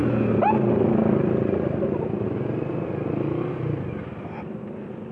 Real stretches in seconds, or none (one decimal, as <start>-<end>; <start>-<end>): 0.0-5.1